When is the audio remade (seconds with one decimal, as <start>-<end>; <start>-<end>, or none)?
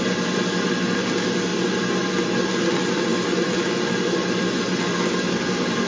none